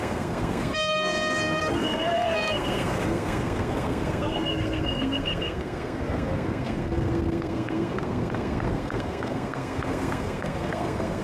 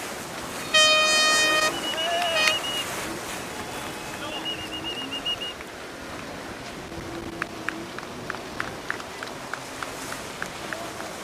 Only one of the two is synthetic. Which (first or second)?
first